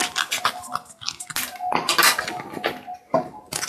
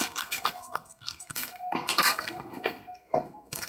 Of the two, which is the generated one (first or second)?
second